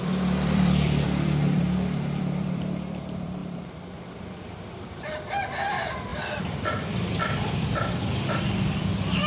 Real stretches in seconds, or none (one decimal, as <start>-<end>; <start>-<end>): 6.1-6.7